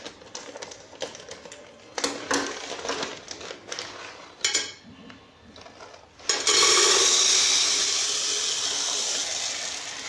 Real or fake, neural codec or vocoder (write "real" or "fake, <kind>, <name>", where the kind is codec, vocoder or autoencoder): real